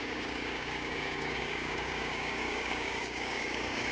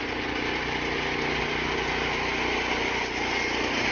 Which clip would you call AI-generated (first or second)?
first